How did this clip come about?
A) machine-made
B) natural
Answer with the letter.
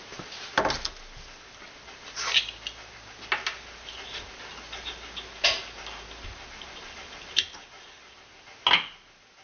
B